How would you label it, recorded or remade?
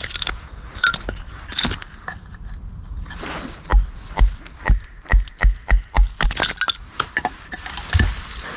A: recorded